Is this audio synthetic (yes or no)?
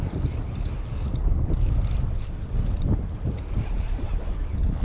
no